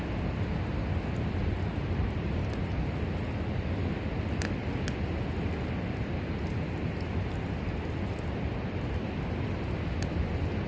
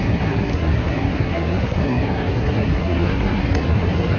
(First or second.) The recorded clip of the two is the first